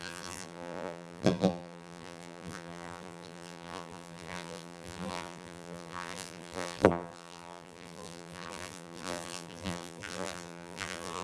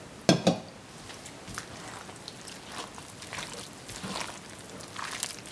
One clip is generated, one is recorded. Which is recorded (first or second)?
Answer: second